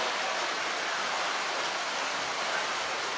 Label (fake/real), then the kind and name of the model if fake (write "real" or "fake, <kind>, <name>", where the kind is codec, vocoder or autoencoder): real